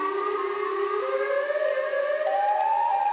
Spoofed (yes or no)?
no